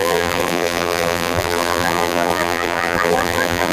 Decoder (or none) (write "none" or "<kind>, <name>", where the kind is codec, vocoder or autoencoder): vocoder, BigVGAN v2